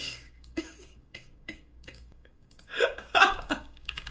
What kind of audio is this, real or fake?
fake